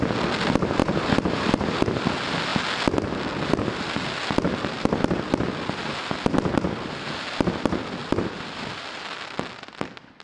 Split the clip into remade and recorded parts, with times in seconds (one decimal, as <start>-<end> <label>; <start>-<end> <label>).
0.0-0.8 recorded; 0.8-1.5 remade; 1.5-8.0 recorded; 8.0-8.7 remade; 8.7-10.2 recorded